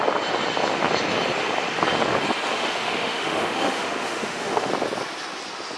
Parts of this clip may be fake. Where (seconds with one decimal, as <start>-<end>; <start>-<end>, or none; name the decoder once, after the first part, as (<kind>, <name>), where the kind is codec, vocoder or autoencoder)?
2.5-4.7 (autoencoder, DAC-VAE)